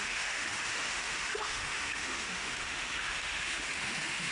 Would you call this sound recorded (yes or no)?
no